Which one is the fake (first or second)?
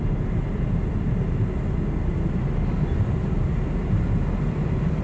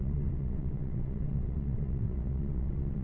second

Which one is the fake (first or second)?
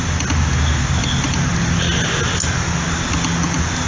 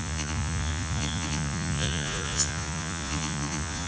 second